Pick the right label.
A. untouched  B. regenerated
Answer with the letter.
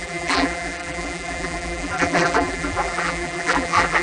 B